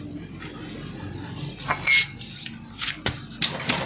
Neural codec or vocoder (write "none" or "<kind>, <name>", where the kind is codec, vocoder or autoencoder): none